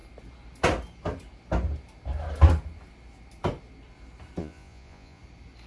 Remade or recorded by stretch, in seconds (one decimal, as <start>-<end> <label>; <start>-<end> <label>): 0.0-4.4 recorded; 4.4-5.2 remade; 5.2-5.7 recorded